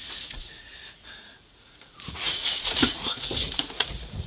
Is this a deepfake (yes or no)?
yes